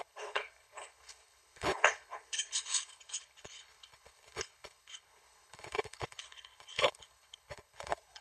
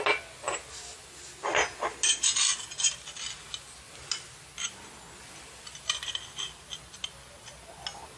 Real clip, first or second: second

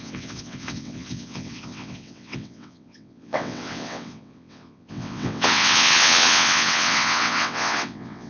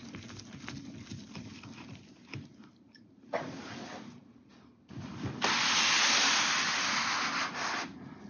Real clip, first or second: second